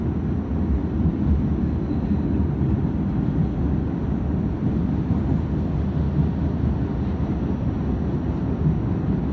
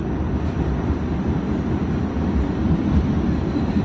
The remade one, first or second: second